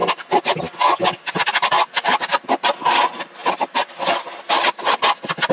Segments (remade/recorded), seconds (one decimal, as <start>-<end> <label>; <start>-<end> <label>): 0.0-5.5 recorded